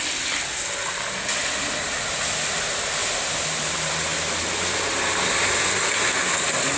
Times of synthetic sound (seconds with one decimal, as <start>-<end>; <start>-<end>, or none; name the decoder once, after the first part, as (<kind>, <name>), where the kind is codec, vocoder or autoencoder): none